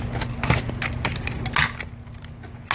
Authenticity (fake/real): real